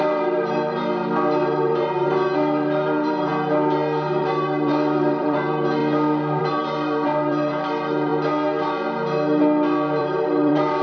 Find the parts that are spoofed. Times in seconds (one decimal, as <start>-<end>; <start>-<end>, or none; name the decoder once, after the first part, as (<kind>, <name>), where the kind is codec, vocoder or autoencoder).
0.0-3.3 (vocoder, BigVGAN v2); 4.2-5.8; 6.4-8.1; 10.0-10.8